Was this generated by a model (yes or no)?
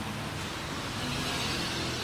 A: no